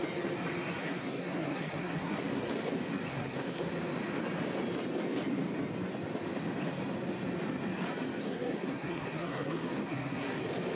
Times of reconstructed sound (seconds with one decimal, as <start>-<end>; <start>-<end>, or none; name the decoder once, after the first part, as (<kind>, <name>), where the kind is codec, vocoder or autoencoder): 0.8-2.5 (codec, SNAC); 3.1-3.7; 8.2-10.4

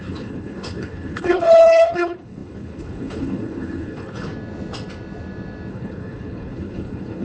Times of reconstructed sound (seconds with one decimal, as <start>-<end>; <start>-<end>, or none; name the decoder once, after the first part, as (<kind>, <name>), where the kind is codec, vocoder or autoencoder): 0.0-4.3 (codec, HILCodec); 5.7-7.2

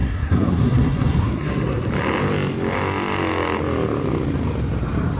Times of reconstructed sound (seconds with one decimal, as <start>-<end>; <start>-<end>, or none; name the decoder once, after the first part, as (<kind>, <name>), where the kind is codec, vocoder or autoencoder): 0.0-1.9 (codec, SNAC)

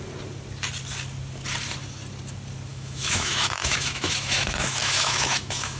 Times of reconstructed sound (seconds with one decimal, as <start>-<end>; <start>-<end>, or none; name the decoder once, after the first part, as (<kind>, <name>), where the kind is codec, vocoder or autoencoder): 2.7-5.8 (autoencoder, DAC-VAE)

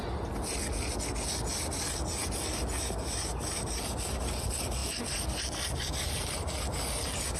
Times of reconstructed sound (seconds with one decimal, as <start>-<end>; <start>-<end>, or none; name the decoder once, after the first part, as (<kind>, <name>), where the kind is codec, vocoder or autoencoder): none

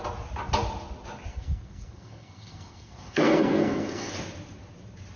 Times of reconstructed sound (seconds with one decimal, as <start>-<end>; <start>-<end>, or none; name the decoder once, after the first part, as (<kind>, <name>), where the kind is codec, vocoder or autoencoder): 1.3-4.1 (codec, SNAC)